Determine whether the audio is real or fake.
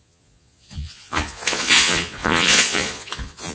fake